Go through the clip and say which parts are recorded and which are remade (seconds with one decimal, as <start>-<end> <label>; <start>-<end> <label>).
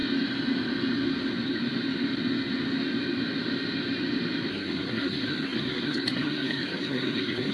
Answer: 0.0-4.5 recorded; 4.5-7.5 remade